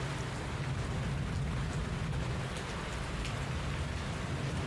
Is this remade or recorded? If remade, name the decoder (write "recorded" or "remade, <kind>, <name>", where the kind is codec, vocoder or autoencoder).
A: recorded